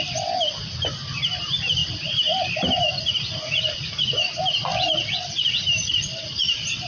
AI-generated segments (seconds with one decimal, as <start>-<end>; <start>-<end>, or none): none